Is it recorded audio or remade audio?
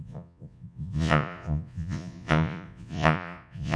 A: remade